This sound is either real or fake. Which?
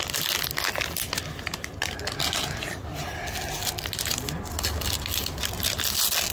real